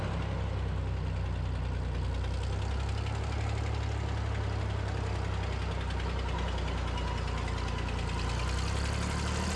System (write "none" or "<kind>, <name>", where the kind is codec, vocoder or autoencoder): none